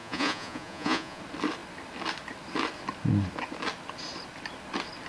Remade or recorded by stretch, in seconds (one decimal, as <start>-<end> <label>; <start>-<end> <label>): 0.0-1.2 remade; 1.2-5.1 recorded